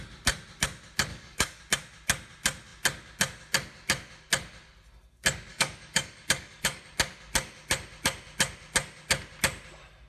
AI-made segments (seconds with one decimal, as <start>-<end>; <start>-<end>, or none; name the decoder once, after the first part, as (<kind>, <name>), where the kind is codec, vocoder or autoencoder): 1.1-1.6 (codec, DAC); 5.5-6.8